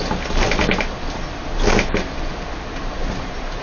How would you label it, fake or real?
real